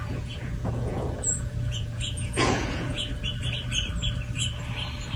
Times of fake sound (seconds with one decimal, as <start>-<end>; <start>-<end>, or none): 0.0-3.1